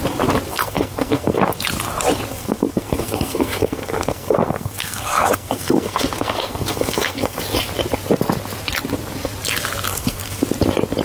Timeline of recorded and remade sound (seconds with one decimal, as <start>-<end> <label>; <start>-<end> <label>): 0.0-0.5 recorded; 0.5-1.4 remade; 1.4-2.3 recorded; 2.3-7.4 remade; 7.4-9.9 recorded; 9.9-10.4 remade; 10.4-11.0 recorded